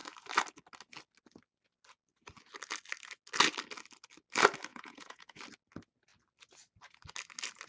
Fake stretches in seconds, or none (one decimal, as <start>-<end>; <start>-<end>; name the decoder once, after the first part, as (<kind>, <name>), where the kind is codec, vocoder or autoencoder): 4.7-5.4 (vocoder, Vocos)